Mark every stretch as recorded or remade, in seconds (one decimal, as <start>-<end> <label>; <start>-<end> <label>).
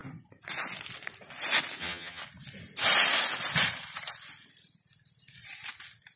0.0-1.8 recorded; 1.8-2.2 remade; 2.2-6.2 recorded